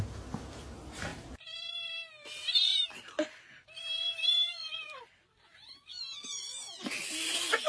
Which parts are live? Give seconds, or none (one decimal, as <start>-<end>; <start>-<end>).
0.0-1.1; 1.7-2.7; 5.1-7.7